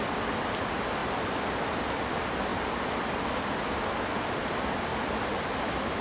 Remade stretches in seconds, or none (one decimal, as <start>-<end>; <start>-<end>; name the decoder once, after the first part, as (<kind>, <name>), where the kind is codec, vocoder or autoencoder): 1.0-2.0 (vocoder, BigVGAN v2); 2.5-3.3

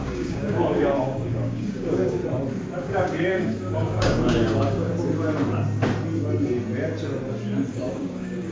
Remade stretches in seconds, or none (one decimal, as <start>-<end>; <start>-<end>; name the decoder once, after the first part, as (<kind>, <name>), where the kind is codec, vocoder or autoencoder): 0.0-2.2 (codec, DAC); 2.8-4.9; 7.7-8.5

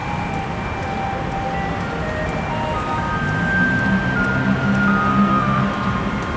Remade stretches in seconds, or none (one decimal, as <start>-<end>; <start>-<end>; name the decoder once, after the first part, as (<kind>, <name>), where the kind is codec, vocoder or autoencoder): 5.1-5.6 (codec, SNAC)